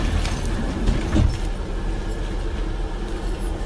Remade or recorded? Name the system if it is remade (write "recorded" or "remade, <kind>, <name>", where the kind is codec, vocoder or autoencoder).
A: recorded